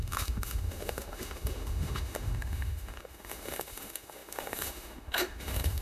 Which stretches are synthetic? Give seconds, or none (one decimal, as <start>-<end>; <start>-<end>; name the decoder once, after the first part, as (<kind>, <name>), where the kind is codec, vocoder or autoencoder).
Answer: 0.0-5.8 (autoencoder, DAC-VAE)